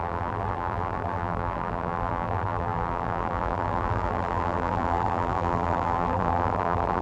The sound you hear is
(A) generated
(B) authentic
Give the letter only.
A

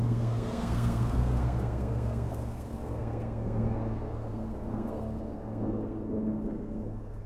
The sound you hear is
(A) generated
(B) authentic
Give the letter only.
A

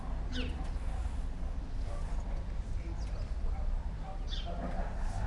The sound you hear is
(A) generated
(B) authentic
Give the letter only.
B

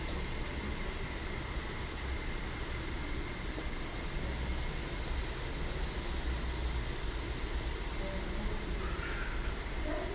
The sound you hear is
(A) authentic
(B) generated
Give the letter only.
A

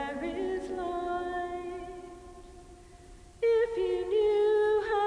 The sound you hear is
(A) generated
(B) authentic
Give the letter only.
B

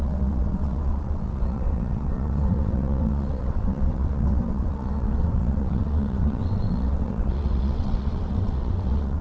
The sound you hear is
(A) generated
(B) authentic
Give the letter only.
A